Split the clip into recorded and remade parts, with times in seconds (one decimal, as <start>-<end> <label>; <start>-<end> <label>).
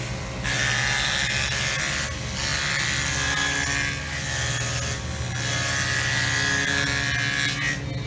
0.0-8.1 recorded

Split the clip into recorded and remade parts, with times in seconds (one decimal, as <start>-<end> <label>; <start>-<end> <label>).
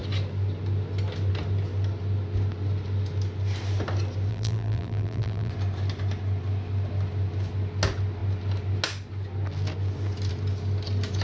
0.0-4.3 recorded; 4.3-5.5 remade; 5.5-11.2 recorded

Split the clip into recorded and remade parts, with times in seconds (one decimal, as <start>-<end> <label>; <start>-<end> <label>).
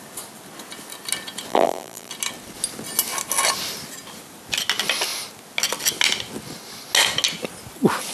0.0-1.5 recorded; 1.5-2.1 remade; 2.1-8.1 recorded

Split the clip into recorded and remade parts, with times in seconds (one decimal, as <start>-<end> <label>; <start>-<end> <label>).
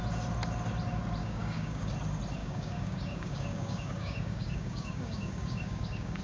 0.0-1.2 recorded; 1.2-1.9 remade; 1.9-2.4 recorded; 2.4-6.2 remade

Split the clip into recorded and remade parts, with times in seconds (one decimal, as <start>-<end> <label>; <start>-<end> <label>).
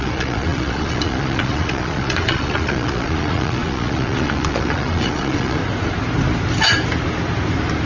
0.0-5.6 remade; 5.6-7.9 recorded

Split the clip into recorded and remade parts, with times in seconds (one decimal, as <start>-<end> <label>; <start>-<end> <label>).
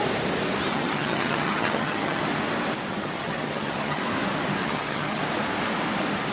0.0-0.7 recorded; 0.7-2.2 remade; 2.2-2.9 recorded; 2.9-4.0 remade; 4.0-4.6 recorded; 4.6-5.2 remade; 5.2-6.3 recorded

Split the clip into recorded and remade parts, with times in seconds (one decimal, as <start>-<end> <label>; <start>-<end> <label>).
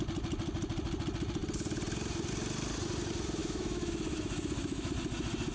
0.0-3.4 recorded; 3.4-4.9 remade; 4.9-5.5 recorded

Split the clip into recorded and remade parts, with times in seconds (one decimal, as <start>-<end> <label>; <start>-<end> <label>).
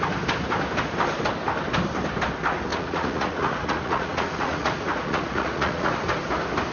0.0-2.7 recorded; 2.7-5.9 remade; 5.9-6.7 recorded